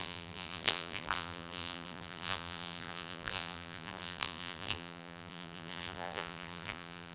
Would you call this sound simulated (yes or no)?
yes